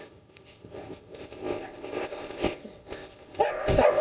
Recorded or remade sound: remade